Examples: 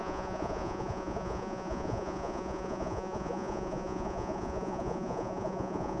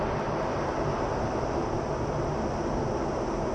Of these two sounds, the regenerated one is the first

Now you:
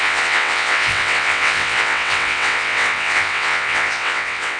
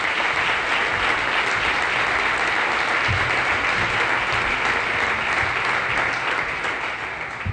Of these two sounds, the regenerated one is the first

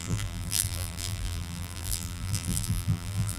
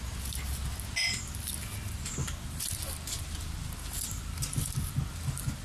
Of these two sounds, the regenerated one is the first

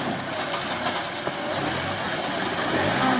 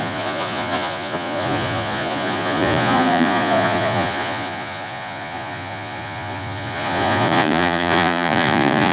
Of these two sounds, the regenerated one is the second